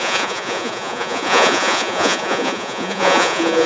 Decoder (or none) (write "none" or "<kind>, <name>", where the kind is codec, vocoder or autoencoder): vocoder, Vocos